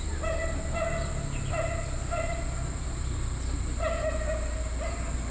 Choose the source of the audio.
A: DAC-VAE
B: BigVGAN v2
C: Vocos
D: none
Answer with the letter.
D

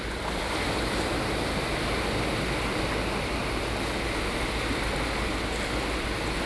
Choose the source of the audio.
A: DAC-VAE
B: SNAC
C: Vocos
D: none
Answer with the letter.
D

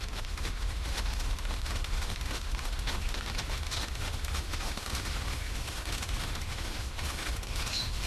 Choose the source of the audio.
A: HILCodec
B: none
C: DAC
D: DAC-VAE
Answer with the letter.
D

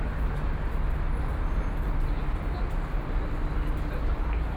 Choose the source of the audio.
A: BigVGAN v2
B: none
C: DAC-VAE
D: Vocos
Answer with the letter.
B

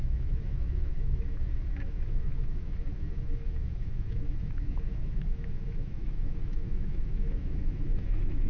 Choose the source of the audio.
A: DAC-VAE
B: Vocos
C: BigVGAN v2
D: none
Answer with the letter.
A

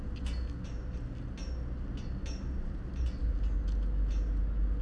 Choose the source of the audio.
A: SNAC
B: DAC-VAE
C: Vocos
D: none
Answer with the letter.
D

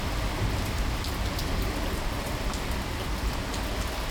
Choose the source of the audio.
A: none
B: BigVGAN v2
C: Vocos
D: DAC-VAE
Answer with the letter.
A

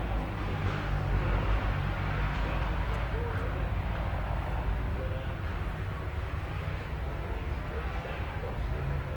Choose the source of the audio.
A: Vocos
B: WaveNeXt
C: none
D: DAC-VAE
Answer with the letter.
C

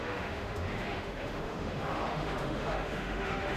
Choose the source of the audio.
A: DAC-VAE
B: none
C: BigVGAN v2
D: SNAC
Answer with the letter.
A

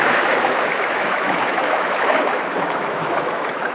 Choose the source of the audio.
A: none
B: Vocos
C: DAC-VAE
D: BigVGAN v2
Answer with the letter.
C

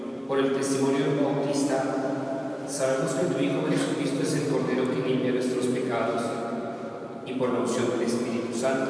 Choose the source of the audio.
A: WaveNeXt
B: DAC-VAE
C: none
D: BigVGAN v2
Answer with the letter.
C